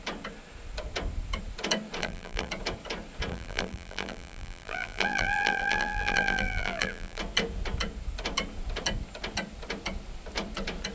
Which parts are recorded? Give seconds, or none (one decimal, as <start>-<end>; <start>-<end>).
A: 0.0-2.0; 2.5-3.3; 7.2-10.9